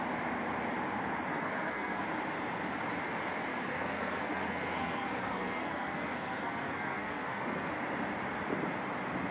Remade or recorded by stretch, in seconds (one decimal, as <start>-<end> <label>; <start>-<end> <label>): 0.0-1.3 recorded; 1.3-2.0 remade; 2.0-3.5 recorded; 3.5-7.7 remade; 7.7-9.3 recorded